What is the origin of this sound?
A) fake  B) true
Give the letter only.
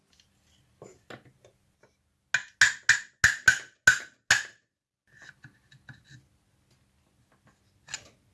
B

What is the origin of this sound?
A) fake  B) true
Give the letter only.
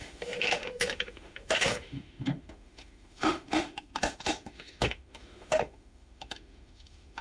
A